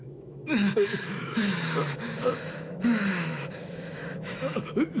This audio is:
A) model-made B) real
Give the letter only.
A